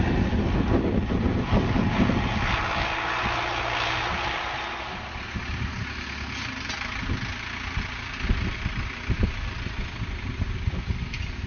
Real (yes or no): yes